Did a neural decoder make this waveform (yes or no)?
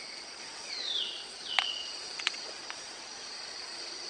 yes